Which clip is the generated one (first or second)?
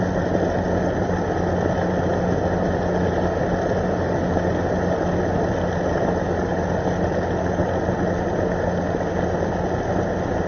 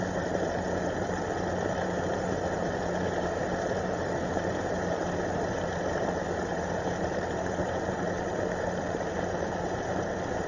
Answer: second